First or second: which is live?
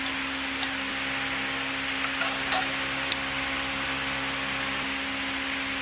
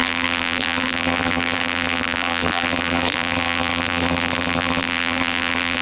first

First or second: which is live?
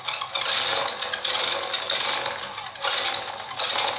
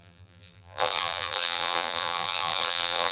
first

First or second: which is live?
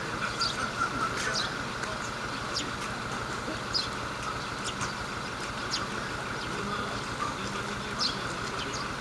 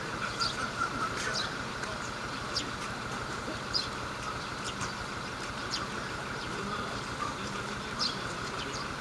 first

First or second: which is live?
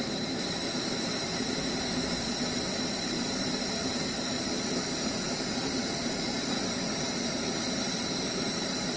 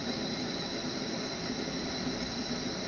second